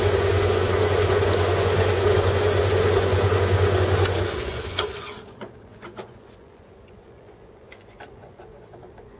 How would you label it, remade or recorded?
remade